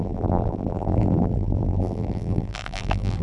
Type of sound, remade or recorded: remade